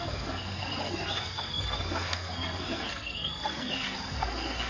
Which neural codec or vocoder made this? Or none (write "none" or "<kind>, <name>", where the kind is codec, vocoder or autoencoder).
codec, SNAC